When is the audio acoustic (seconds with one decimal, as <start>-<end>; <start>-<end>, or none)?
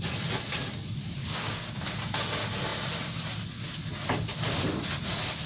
0.0-1.2; 1.8-5.5